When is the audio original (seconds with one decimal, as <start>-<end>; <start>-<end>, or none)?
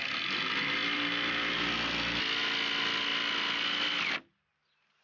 0.0-5.0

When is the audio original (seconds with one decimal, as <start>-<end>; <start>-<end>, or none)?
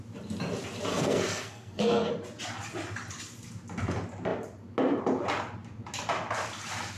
0.0-0.9; 2.1-7.0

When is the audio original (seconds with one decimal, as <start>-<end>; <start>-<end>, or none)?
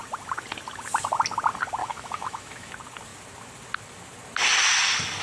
0.0-1.8; 2.7-5.2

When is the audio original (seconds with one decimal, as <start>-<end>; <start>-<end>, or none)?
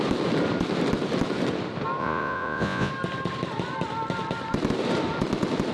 0.0-2.0; 2.9-5.7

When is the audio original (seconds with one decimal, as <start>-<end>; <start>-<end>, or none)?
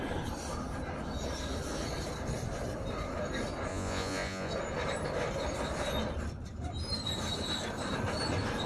0.0-3.7; 4.5-8.7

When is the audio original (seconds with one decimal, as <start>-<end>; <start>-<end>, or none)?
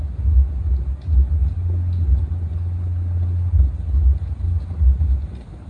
0.0-5.7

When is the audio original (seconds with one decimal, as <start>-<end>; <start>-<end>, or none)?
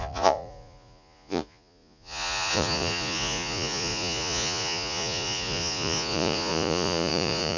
none